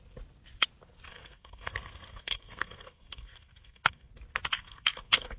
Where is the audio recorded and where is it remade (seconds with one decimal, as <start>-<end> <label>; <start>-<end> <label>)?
0.0-1.1 recorded; 1.1-4.1 remade; 4.1-4.5 recorded; 4.5-5.4 remade